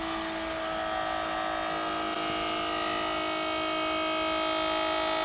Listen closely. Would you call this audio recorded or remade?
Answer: recorded